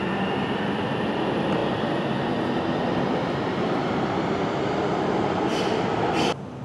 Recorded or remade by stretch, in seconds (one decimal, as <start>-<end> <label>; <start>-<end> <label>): 0.0-6.6 recorded